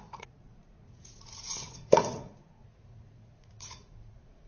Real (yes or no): no